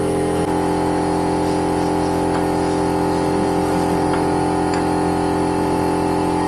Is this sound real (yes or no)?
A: yes